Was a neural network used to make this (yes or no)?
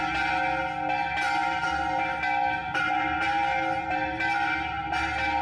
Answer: no